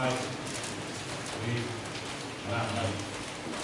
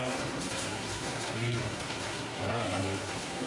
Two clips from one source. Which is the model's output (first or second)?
second